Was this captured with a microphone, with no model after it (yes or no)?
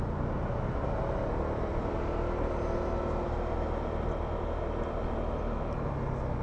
yes